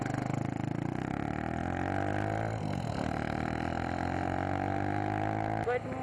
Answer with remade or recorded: recorded